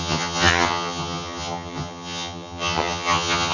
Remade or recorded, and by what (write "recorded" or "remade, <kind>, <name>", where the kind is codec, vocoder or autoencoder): remade, vocoder, HiFi-GAN